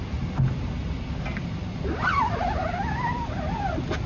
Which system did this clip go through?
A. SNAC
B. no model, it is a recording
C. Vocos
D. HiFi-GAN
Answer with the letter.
B